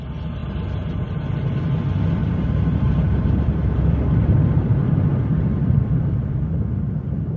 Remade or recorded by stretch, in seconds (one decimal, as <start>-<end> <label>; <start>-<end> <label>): 0.0-2.2 recorded; 2.2-6.3 remade; 6.3-7.4 recorded